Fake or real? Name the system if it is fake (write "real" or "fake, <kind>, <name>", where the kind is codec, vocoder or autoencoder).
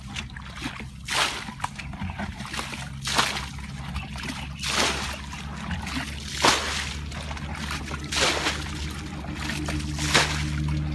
real